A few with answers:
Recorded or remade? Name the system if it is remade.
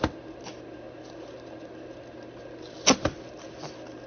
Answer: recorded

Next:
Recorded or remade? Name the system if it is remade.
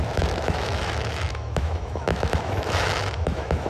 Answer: remade, autoencoder, DAC-VAE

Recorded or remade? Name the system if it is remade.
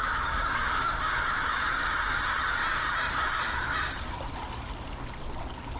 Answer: recorded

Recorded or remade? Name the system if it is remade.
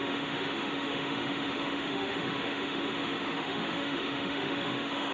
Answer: remade, autoencoder, DAC-VAE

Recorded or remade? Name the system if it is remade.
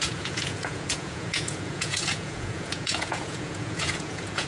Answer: remade, vocoder, Vocos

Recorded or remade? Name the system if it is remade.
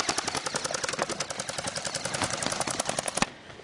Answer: recorded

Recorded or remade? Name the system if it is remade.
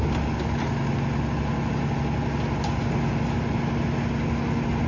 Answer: recorded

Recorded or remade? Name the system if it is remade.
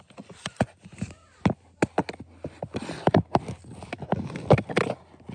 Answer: recorded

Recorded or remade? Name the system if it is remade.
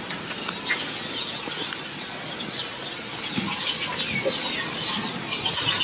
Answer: recorded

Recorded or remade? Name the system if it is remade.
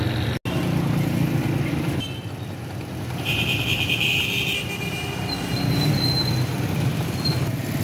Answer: recorded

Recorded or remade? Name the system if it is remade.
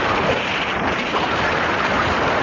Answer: remade, vocoder, BigVGAN v2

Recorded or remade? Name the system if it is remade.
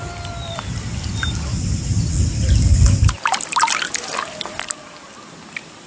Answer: recorded